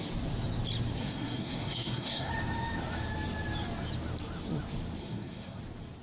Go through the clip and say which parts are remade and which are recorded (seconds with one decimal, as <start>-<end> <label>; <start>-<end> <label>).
0.0-1.0 recorded; 1.0-2.3 remade; 2.3-5.0 recorded; 5.0-5.6 remade; 5.6-6.0 recorded